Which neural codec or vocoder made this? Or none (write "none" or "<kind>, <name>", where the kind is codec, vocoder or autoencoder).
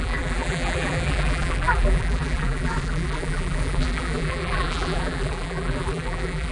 vocoder, BigVGAN v2